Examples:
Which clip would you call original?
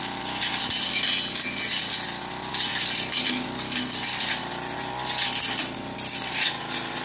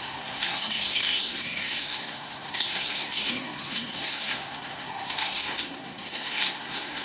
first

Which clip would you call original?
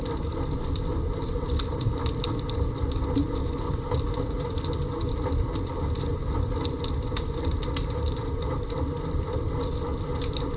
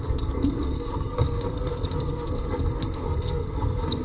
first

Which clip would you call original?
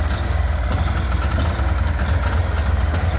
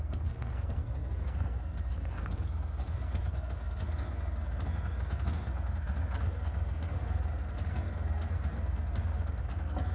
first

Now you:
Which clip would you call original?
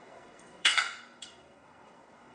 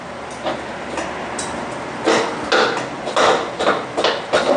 second